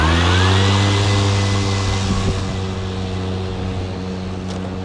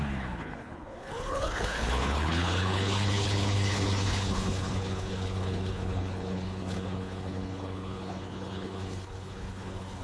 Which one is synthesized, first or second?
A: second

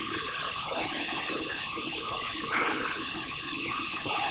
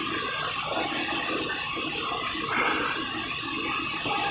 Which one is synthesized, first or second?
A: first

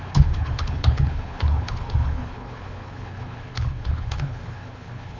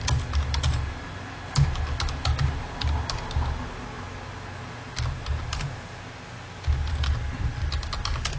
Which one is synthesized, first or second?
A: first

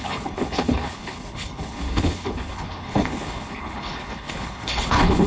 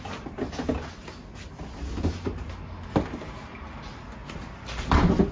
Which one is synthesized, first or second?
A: first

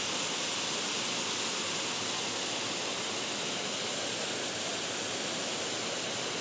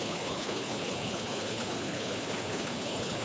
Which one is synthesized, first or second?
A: second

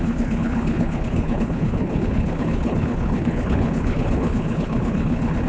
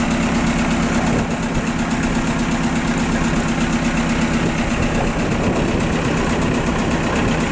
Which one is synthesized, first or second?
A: first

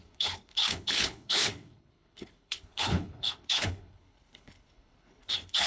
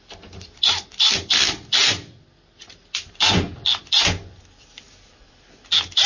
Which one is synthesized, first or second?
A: first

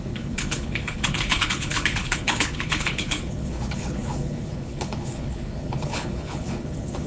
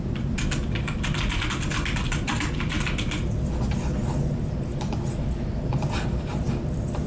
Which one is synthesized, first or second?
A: first